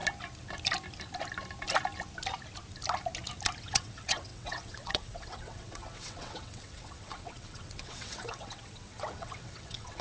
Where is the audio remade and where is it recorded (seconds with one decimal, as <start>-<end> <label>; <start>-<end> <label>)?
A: 0.0-3.6 recorded; 3.6-10.0 remade